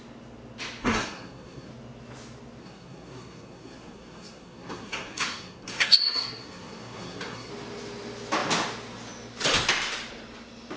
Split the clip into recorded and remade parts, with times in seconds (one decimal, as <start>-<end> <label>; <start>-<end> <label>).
0.0-0.8 recorded; 0.8-1.7 remade; 1.7-2.6 recorded; 2.6-7.5 remade; 7.5-10.8 recorded